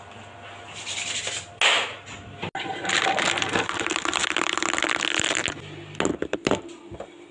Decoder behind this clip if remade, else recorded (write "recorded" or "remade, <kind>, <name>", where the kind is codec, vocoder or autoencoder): recorded